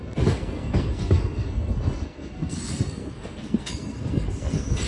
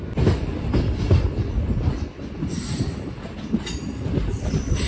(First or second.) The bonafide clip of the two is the second